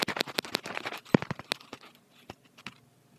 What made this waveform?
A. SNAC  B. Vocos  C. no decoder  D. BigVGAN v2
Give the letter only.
C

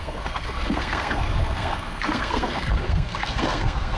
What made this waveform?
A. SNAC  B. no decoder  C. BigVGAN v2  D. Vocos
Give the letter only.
A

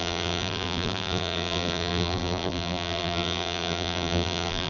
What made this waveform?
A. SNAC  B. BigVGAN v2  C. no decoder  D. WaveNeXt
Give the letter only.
B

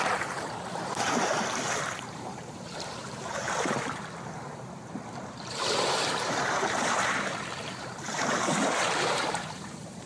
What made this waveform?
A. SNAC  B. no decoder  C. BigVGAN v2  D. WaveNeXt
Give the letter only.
C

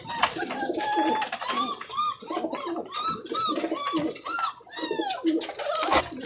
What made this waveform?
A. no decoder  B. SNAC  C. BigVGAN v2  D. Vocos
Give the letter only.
A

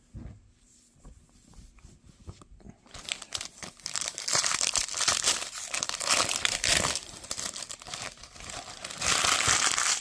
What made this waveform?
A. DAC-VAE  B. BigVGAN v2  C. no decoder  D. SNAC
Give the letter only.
B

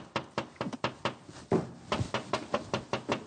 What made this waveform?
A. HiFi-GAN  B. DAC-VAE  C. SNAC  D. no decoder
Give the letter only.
D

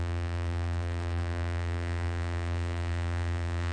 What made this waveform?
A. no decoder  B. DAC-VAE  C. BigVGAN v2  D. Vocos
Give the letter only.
C